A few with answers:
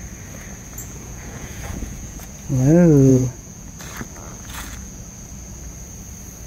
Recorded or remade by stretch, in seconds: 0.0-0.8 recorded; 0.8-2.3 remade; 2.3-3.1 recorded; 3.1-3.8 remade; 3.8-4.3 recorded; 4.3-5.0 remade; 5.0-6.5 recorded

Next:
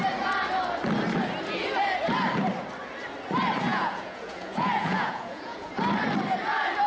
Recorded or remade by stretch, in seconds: 0.0-3.7 recorded; 3.7-5.7 remade; 5.7-6.9 recorded

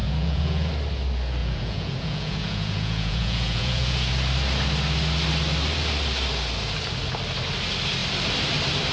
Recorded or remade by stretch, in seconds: 0.0-0.7 remade; 0.7-1.4 recorded; 1.4-4.1 remade; 4.1-8.9 recorded

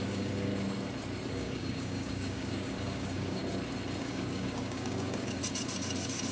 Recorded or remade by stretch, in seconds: 0.0-0.5 remade; 0.5-1.3 recorded; 1.3-3.4 remade; 3.4-4.0 recorded; 4.0-5.4 remade; 5.4-6.3 recorded

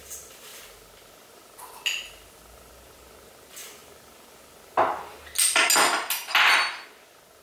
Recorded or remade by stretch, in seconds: 0.0-7.4 recorded